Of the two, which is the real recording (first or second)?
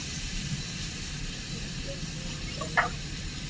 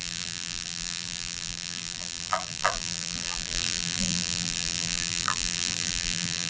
first